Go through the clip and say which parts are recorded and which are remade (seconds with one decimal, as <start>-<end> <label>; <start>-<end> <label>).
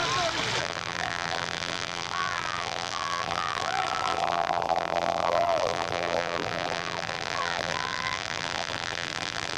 0.0-0.6 recorded; 0.6-9.6 remade